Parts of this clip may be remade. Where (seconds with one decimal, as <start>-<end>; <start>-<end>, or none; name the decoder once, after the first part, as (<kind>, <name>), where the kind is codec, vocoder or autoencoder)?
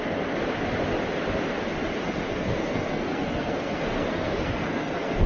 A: 2.3-5.3 (codec, SNAC)